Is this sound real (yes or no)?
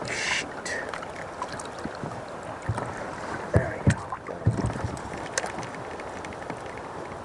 yes